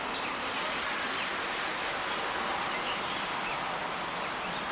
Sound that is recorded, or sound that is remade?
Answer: recorded